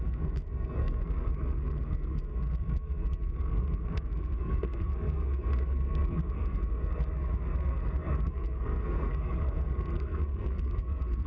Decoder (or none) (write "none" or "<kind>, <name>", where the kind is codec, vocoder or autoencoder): codec, SNAC